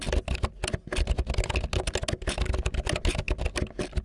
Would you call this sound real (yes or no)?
yes